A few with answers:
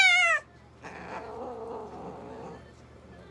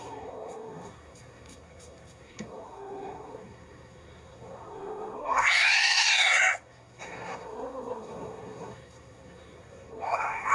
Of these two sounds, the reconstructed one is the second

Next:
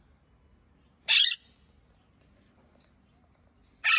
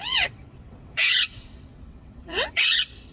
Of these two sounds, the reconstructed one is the second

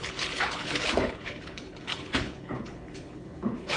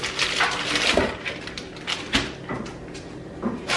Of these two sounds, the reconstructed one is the first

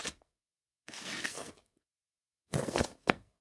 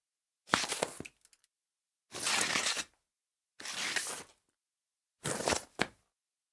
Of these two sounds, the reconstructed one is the first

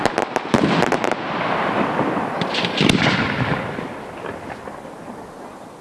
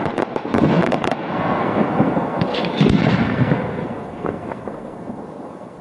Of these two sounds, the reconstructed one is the second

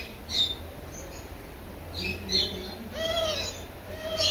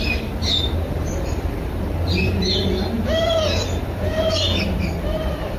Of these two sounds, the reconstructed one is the second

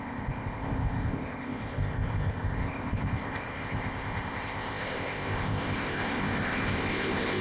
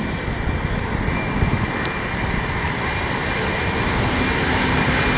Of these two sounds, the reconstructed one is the first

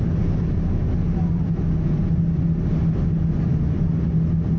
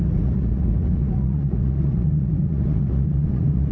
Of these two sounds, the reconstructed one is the second